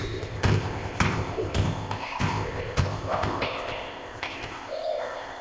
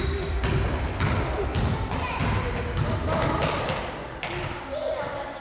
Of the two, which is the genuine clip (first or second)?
second